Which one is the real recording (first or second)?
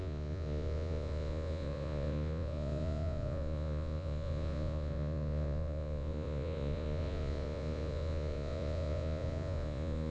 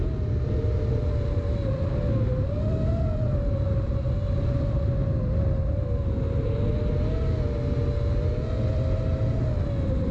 second